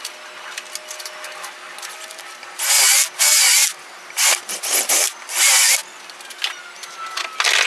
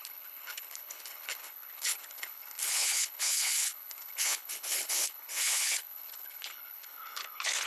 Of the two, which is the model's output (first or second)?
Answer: second